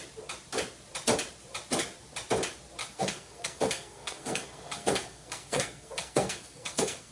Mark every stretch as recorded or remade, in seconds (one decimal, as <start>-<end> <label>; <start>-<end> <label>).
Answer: 0.0-2.8 recorded; 2.8-7.1 remade